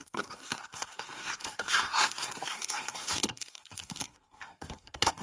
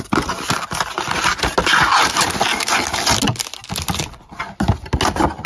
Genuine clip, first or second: second